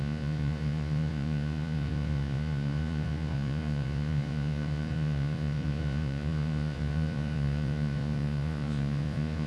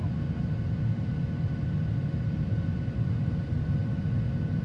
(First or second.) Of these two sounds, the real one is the second